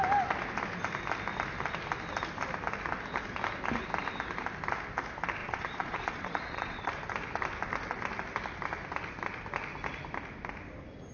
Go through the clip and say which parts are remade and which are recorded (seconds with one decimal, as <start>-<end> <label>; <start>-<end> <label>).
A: 0.0-5.4 recorded; 5.4-6.9 remade; 6.9-11.1 recorded